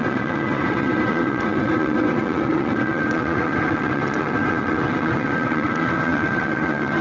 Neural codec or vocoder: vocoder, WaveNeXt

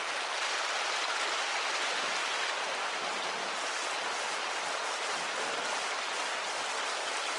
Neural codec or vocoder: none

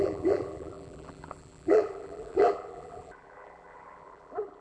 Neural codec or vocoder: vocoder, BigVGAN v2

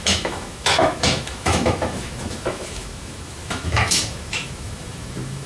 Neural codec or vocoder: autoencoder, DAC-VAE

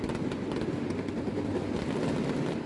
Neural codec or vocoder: none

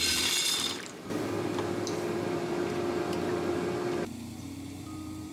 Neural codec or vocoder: vocoder, BigVGAN v2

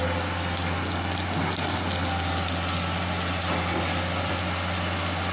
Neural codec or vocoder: none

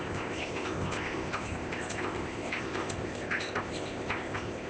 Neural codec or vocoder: codec, ZipCodec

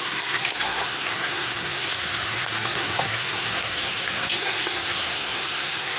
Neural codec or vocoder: codec, SNAC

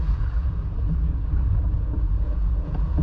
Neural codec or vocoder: vocoder, Vocos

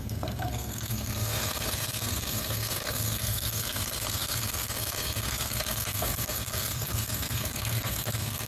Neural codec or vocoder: codec, SNAC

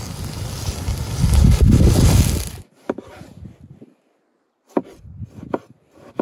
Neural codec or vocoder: none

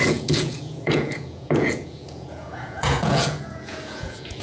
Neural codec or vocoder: vocoder, Vocos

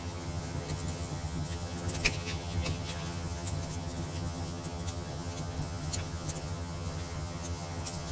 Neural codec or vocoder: vocoder, HiFi-GAN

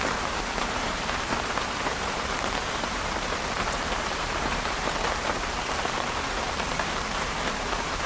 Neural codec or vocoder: vocoder, BigVGAN v2